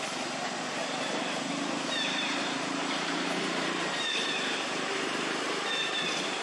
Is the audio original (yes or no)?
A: no